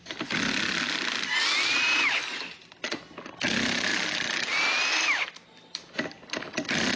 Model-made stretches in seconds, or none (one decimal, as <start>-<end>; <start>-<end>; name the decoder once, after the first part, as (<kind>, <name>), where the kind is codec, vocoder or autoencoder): none